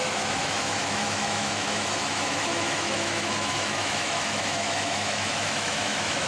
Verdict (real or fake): fake